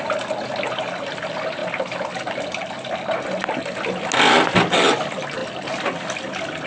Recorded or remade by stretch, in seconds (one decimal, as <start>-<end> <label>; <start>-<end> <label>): 0.0-6.7 recorded